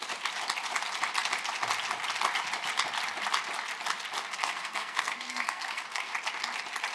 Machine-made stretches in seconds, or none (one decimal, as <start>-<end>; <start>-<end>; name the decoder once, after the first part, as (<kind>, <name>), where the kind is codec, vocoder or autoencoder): 4.2-6.1 (codec, SNAC)